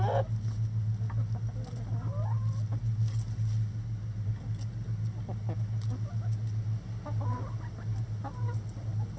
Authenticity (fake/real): real